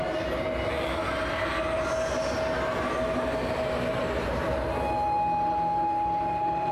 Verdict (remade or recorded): recorded